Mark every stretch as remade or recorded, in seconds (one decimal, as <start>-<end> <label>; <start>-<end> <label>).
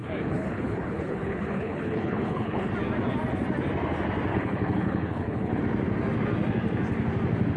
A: 0.0-2.7 remade; 2.7-4.3 recorded; 4.3-5.6 remade; 5.6-7.6 recorded